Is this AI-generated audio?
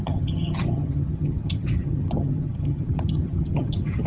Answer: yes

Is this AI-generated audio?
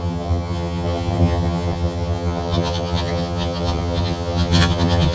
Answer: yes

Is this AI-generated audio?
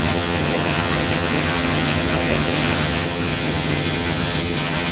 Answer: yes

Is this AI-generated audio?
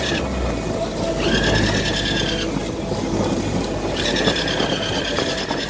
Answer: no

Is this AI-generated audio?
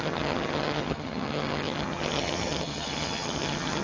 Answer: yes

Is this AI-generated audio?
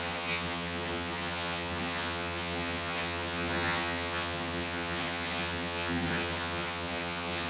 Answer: yes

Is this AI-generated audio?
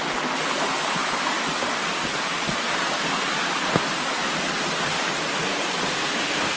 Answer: no